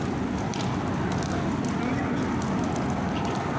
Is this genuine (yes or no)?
yes